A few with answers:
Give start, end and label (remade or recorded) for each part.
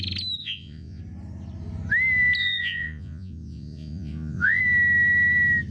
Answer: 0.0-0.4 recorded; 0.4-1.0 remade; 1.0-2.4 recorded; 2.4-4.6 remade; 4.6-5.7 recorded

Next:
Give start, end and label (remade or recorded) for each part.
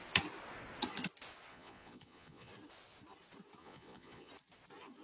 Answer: 0.0-1.5 recorded; 1.5-2.5 remade; 2.5-3.6 recorded; 3.6-4.3 remade; 4.3-5.0 recorded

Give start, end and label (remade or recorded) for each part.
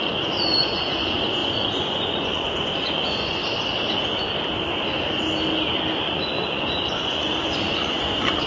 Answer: 0.0-3.4 remade; 3.4-6.0 recorded; 6.0-8.5 remade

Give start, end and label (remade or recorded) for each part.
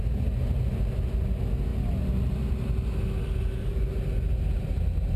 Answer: 0.0-5.2 recorded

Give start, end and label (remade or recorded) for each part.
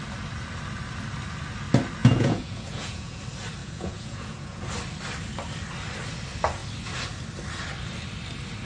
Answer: 0.0-2.0 recorded; 2.0-3.2 remade; 3.2-3.6 recorded; 3.6-4.6 remade; 4.6-8.7 recorded